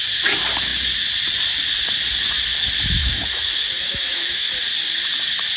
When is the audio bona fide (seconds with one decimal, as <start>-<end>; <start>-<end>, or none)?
0.0-3.0; 4.5-5.6